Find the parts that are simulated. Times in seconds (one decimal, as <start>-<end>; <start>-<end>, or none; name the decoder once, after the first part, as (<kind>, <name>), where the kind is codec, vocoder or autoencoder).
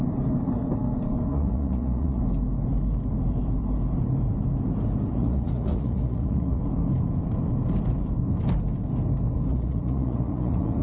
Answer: 1.3-2.2 (vocoder, Vocos); 5.1-6.6; 9.5-10.8